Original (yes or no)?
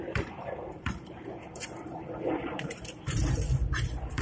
no